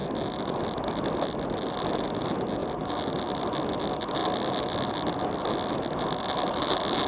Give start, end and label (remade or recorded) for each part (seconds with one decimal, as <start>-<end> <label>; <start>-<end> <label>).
0.0-7.1 recorded